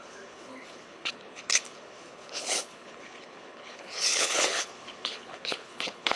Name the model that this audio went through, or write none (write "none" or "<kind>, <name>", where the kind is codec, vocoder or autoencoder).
codec, HILCodec